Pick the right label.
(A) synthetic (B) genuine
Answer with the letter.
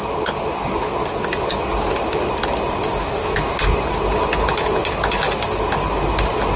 B